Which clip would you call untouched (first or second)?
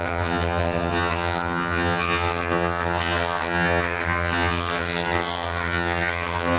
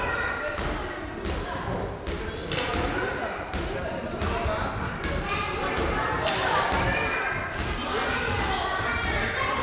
second